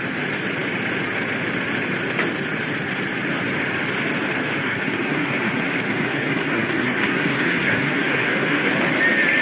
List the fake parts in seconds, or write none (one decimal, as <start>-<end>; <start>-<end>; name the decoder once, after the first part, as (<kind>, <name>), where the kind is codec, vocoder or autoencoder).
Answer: 4.6-8.7 (codec, SNAC)